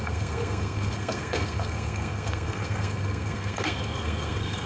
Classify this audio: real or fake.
fake